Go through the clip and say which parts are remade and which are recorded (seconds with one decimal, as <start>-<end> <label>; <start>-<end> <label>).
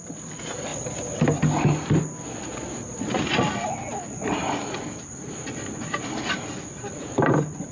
0.0-0.7 recorded; 0.7-1.2 remade; 1.2-7.7 recorded